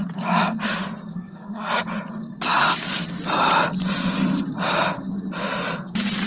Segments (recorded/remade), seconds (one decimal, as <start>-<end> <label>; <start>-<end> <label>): 0.0-1.1 recorded; 1.1-1.8 remade; 1.8-6.3 recorded